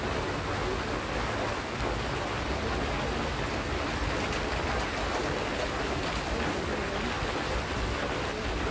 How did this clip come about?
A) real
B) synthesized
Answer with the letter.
A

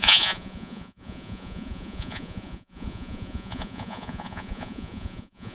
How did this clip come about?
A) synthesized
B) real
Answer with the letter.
A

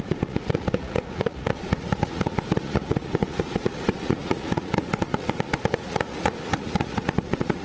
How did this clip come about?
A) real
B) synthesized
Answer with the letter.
B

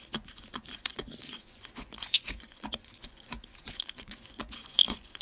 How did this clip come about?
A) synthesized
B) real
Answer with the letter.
A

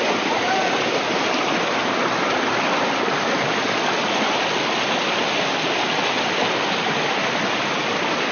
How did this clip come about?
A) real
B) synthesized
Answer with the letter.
A